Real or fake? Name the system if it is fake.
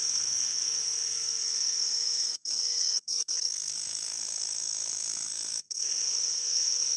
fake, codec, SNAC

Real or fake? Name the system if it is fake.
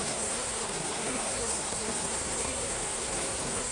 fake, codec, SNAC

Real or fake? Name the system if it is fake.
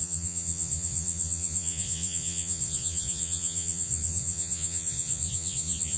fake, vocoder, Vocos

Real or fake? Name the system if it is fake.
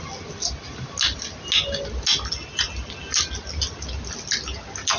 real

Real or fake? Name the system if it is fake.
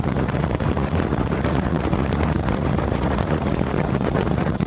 fake, vocoder, Vocos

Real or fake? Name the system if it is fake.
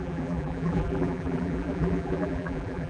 fake, vocoder, BigVGAN v2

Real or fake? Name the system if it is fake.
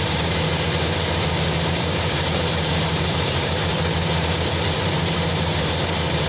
fake, vocoder, BigVGAN v2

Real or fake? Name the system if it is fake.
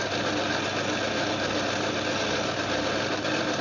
real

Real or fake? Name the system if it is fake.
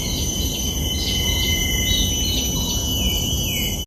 real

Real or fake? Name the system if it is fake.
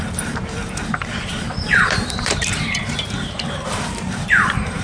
fake, vocoder, BigVGAN v2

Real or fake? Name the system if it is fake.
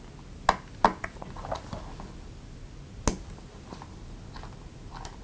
real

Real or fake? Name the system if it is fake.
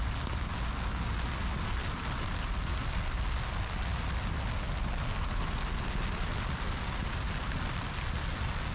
real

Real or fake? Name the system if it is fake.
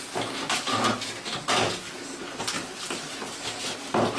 real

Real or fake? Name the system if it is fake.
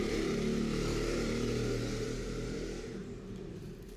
fake, vocoder, BigVGAN v2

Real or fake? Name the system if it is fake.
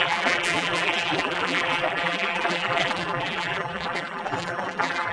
fake, vocoder, BigVGAN v2